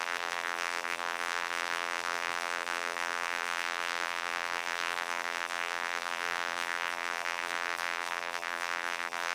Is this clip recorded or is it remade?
remade